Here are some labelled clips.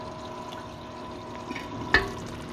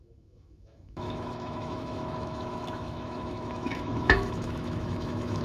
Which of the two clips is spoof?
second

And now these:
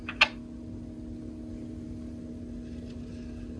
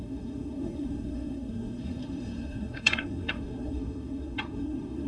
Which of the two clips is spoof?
second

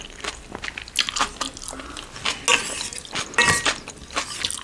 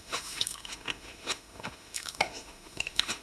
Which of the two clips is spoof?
second